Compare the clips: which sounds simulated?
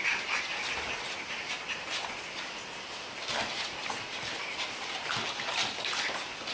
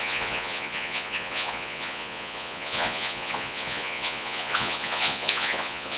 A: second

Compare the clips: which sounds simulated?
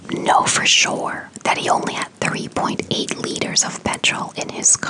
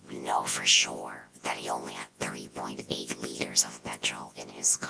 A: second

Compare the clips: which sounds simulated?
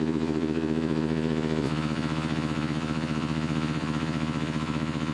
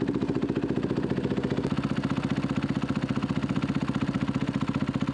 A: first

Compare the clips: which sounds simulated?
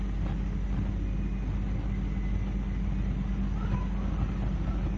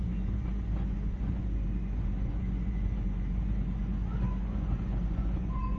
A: second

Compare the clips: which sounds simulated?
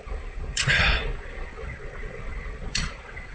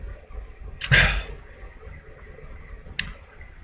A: first